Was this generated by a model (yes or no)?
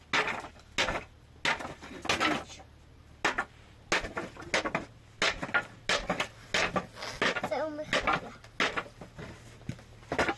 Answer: no